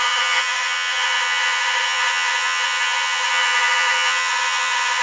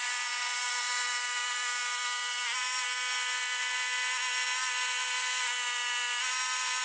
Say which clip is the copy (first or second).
first